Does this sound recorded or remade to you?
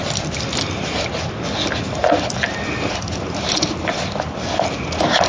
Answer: recorded